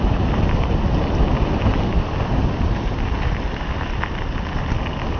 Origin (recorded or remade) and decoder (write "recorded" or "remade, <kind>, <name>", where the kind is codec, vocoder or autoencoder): recorded